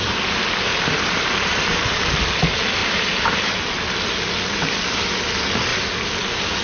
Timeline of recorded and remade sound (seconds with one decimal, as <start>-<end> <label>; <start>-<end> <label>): 0.0-0.7 recorded; 0.7-2.2 remade; 2.2-2.8 recorded; 2.8-3.5 remade; 3.5-6.6 recorded